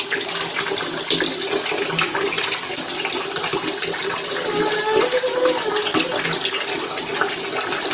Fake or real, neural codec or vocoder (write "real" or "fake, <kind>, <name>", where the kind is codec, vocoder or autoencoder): real